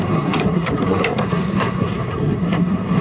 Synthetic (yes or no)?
yes